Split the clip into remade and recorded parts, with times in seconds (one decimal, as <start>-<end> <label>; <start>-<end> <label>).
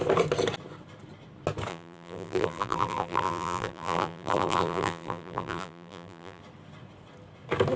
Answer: 0.0-1.7 recorded; 1.7-6.4 remade; 6.4-7.8 recorded